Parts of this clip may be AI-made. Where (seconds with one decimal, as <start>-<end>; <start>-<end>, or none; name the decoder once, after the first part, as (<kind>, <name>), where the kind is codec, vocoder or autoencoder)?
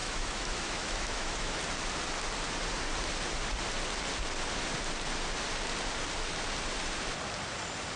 0.0-1.6 (autoencoder, DAC-VAE)